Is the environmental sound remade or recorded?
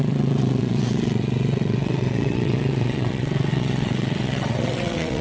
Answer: remade